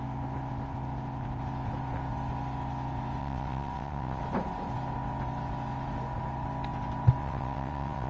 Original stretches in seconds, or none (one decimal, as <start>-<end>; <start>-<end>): 0.0-3.2; 4.2-7.2